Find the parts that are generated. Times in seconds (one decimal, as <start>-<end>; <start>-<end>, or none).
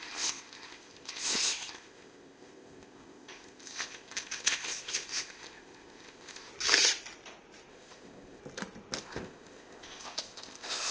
0.0-6.5; 7.7-8.4; 9.0-10.9